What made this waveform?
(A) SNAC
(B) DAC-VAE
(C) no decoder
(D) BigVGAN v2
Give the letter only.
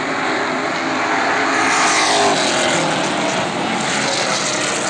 C